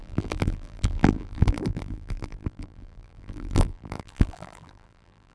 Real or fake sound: fake